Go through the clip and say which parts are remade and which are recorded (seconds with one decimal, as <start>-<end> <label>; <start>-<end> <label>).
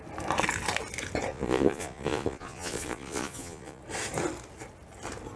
0.0-1.3 recorded; 1.3-3.8 remade; 3.8-5.4 recorded